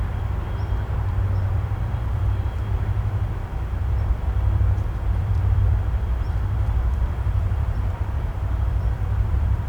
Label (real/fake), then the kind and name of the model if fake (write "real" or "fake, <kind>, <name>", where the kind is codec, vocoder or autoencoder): fake, vocoder, BigVGAN v2